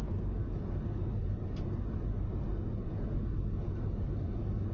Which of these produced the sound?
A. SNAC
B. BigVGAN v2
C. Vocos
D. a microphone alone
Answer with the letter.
D